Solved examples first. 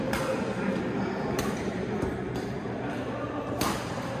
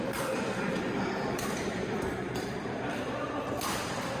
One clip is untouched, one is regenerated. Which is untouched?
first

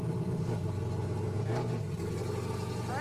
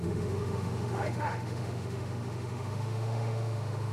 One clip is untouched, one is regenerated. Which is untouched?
first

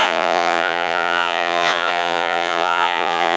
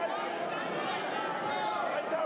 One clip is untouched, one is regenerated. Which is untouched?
second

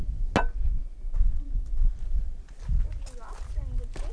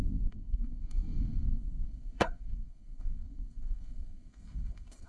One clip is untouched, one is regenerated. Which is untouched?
first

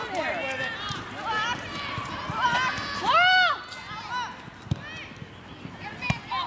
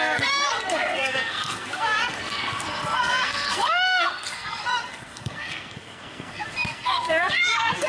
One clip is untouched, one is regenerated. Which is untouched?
first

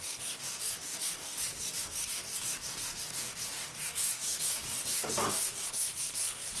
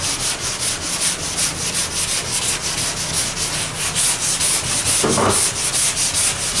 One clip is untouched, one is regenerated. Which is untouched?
second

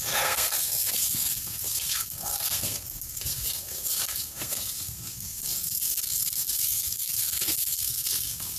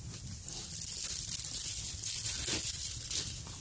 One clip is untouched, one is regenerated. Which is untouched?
second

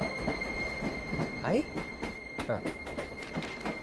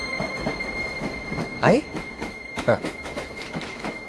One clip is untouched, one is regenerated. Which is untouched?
first